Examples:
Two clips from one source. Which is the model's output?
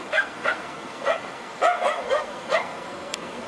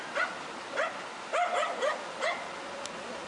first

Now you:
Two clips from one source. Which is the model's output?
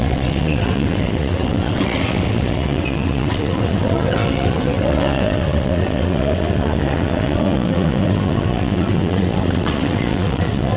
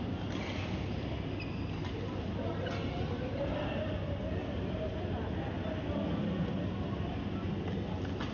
first